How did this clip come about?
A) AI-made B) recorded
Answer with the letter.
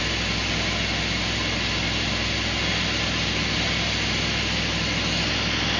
B